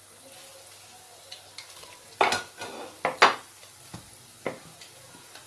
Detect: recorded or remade recorded